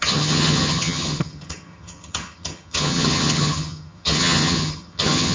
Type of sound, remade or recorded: remade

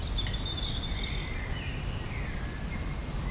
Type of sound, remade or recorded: recorded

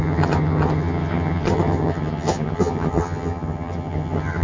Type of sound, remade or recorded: remade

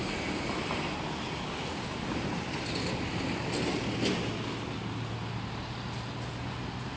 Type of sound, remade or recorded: recorded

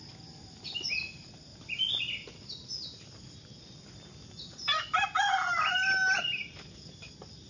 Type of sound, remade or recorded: recorded